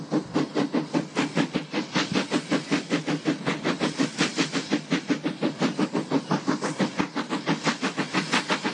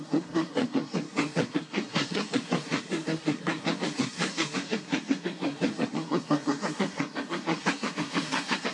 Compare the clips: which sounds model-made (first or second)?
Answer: second